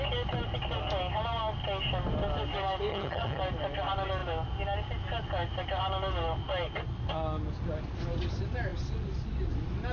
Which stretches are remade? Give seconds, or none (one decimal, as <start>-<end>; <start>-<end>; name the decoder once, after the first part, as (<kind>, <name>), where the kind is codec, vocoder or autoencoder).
2.9-3.4 (vocoder, HiFi-GAN)